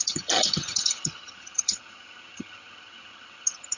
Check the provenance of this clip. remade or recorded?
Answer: remade